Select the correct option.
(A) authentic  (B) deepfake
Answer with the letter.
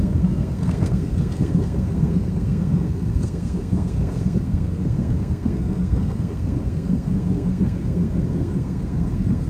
B